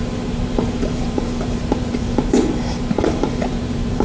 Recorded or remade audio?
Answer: remade